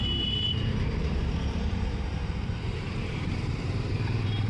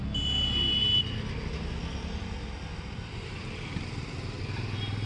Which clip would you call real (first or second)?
second